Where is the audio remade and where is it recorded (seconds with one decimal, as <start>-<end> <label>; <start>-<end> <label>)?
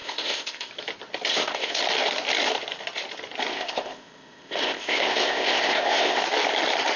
0.0-0.7 remade; 0.7-1.3 recorded; 1.3-1.8 remade; 1.8-3.5 recorded; 3.5-6.2 remade; 6.2-7.0 recorded